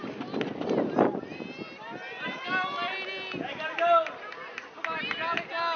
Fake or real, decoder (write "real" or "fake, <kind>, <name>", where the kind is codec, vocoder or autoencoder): real